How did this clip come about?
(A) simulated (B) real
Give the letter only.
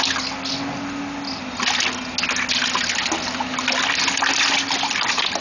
B